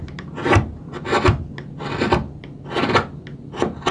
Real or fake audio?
real